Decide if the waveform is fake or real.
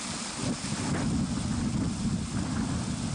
real